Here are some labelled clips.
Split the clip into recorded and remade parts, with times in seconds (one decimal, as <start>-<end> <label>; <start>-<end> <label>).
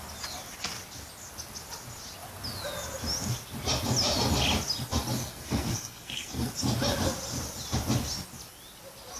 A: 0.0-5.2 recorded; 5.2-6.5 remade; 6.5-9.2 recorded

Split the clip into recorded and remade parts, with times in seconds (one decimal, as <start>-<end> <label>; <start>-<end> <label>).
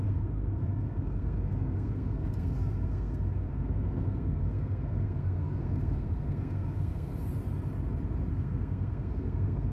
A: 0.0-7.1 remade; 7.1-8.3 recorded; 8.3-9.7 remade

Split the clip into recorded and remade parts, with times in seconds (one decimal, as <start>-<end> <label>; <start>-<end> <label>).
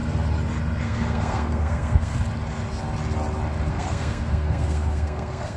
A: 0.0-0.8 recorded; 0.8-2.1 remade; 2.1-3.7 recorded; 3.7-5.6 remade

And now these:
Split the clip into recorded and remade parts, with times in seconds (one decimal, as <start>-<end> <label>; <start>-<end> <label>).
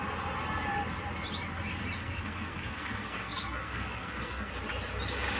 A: 0.0-2.0 recorded; 2.0-4.5 remade; 4.5-5.4 recorded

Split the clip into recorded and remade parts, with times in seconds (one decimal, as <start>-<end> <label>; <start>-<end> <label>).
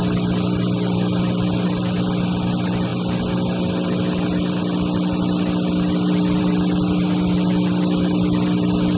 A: 0.0-9.0 recorded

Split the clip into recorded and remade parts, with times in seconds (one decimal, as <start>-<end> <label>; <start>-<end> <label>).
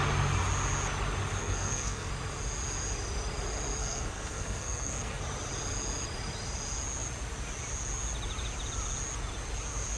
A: 0.0-1.4 recorded; 1.4-2.1 remade; 2.1-3.8 recorded; 3.8-5.2 remade; 5.2-10.0 recorded